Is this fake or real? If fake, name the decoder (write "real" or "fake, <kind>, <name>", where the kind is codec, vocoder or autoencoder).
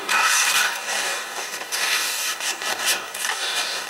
fake, codec, DAC